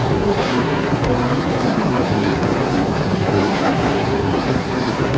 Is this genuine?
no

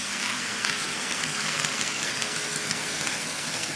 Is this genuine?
no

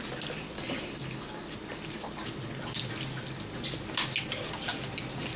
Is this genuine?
yes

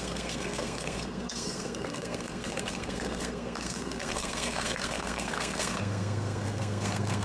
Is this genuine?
no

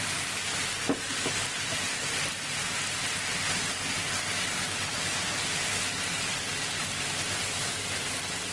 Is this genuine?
yes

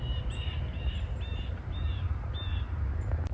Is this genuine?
yes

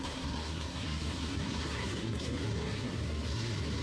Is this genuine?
no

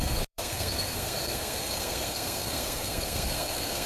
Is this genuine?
no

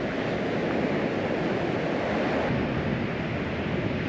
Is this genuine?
yes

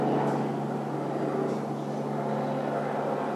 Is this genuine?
yes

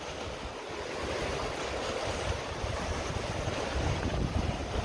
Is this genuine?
yes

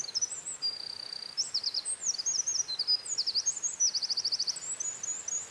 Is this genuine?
yes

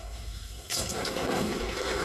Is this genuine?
no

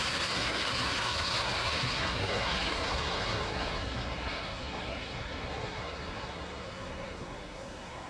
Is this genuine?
no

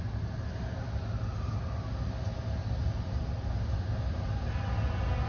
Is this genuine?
yes